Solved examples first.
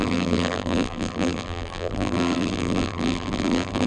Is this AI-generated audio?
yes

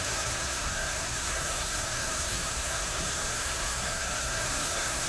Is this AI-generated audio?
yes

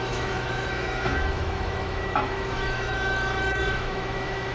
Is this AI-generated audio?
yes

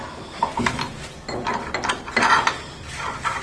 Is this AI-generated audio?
no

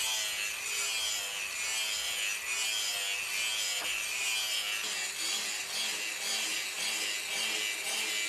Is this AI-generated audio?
no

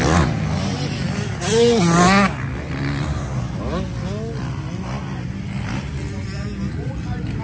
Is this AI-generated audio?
no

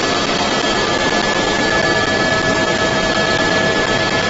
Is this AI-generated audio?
no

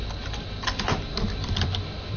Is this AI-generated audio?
no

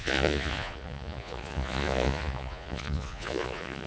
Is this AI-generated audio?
yes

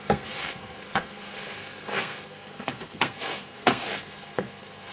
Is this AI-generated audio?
yes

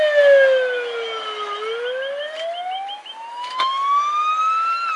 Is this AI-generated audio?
no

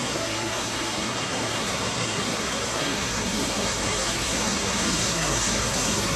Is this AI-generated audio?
yes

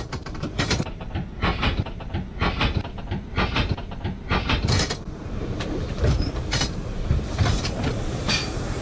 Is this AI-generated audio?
yes